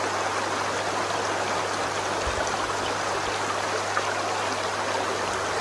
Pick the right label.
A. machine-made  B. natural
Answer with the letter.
B